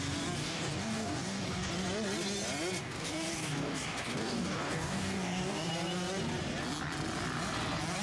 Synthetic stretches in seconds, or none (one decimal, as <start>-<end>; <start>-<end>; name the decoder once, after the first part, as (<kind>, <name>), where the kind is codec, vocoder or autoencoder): 0.4-1.7 (codec, DAC); 2.8-5.7